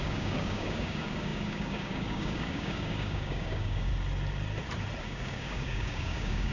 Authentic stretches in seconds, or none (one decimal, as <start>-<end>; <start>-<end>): 3.9-5.0